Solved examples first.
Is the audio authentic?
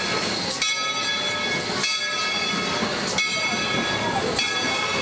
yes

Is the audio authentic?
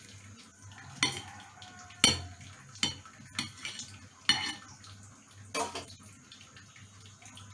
yes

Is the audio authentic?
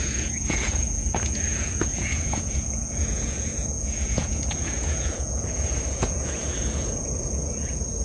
no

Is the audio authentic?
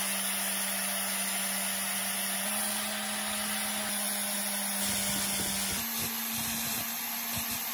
yes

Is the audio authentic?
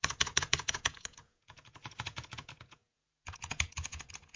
no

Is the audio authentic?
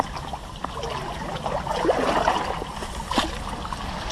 yes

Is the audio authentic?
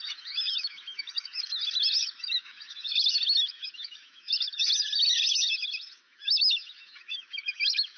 no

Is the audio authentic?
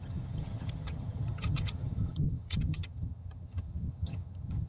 no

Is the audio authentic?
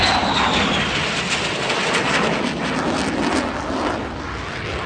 yes